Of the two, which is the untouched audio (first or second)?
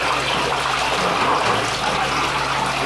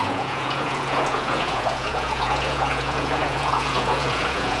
first